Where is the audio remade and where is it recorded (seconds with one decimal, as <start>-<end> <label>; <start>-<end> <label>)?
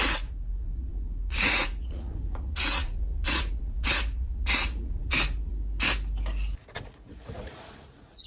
0.0-5.5 remade; 5.5-6.7 recorded; 6.7-8.3 remade